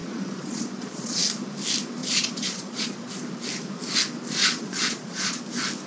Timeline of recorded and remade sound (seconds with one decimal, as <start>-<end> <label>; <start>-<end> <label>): 0.0-1.2 remade; 1.2-2.0 recorded; 2.0-3.1 remade; 3.1-4.4 recorded; 4.4-5.4 remade; 5.4-5.9 recorded